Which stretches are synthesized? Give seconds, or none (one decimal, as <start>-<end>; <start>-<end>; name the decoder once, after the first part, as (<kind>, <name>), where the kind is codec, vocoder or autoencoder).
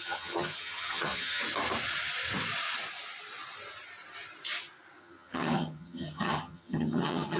0.0-1.4 (vocoder, HiFi-GAN); 5.0-7.4